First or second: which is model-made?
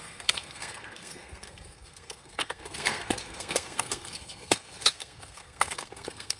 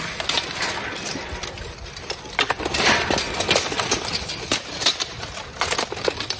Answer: first